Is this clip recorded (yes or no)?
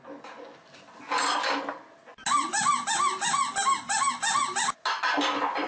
yes